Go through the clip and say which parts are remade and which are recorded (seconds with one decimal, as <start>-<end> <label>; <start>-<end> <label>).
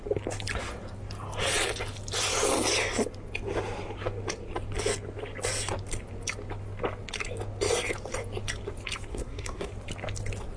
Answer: 0.0-9.1 recorded; 9.1-9.7 remade; 9.7-10.6 recorded